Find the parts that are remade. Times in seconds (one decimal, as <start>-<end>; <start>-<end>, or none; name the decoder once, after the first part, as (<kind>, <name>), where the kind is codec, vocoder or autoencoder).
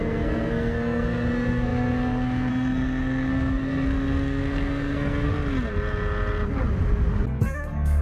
0.0-5.3 (codec, SNAC); 7.4-8.0